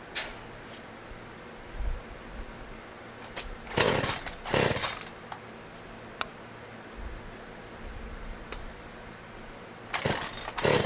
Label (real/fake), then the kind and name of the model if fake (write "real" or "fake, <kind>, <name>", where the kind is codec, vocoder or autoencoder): real